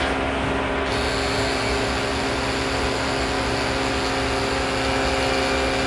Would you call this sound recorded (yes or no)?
yes